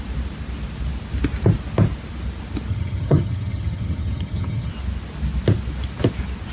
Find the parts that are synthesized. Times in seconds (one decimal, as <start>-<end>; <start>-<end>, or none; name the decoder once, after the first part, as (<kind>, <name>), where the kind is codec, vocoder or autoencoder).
2.7-4.7 (vocoder, HiFi-GAN)